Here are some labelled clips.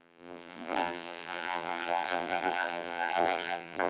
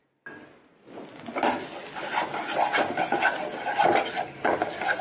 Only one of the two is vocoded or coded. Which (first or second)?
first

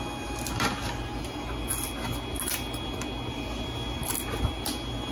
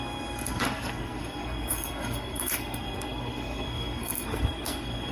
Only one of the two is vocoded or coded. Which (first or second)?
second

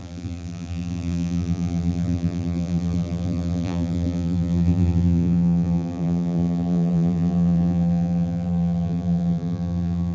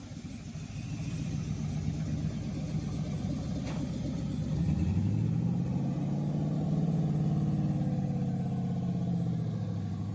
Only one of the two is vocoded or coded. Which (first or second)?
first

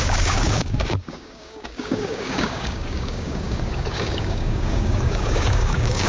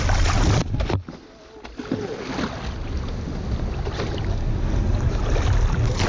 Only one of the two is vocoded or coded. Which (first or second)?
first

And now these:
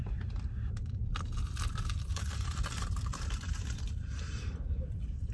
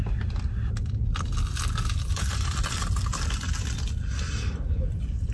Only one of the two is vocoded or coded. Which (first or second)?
first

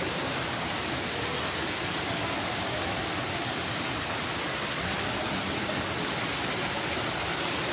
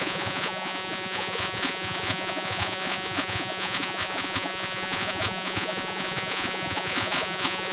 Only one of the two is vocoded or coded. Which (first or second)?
second